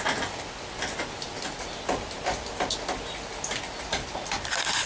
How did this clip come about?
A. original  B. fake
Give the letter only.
A